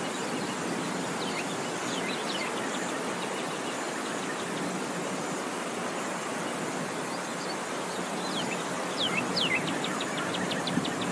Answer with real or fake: real